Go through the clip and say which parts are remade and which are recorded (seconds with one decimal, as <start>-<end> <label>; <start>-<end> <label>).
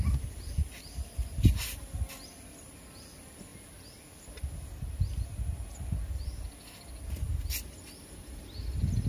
0.0-9.1 recorded